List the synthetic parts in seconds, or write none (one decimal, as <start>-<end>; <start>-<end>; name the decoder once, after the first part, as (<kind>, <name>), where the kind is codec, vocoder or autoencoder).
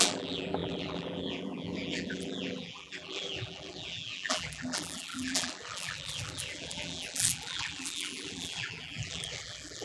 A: 0.0-9.8 (vocoder, BigVGAN v2)